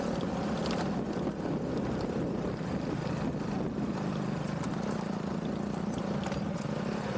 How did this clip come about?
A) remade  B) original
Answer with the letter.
B